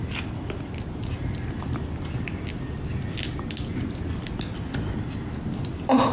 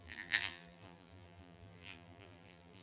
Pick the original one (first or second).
first